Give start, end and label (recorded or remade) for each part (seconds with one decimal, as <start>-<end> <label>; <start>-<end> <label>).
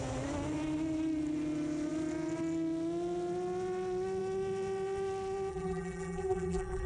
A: 0.0-5.5 recorded; 5.5-6.9 remade